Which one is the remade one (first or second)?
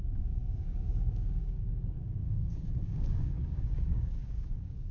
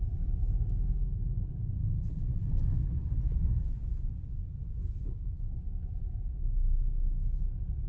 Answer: first